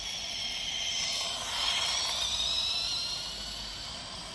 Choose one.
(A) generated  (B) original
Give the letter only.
B